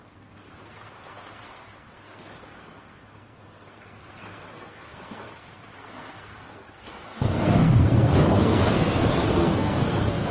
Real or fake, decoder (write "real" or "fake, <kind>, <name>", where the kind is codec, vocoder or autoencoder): fake, codec, SNAC